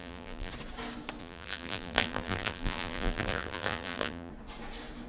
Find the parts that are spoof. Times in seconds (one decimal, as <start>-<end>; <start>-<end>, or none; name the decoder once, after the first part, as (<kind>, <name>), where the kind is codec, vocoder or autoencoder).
0.0-0.5 (vocoder, BigVGAN v2); 1.2-4.3